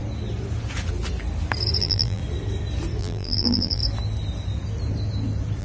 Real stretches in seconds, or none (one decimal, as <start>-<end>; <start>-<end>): 0.0-1.8; 2.2-3.0; 3.8-5.6